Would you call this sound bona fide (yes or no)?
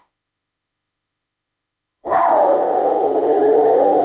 no